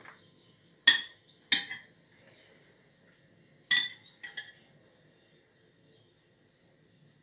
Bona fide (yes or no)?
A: yes